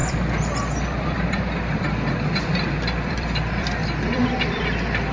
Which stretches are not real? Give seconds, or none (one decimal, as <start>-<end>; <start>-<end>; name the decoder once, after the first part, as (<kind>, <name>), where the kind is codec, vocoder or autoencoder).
0.0-5.1 (vocoder, BigVGAN v2)